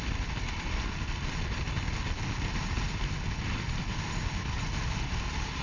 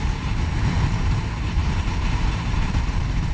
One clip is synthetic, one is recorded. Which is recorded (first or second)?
first